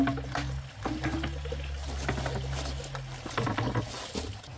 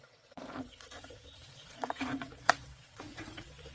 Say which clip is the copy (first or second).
second